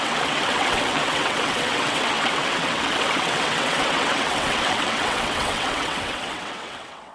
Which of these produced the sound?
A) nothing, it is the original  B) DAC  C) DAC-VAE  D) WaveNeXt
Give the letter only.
D